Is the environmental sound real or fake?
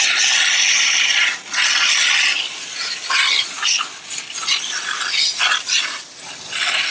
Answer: real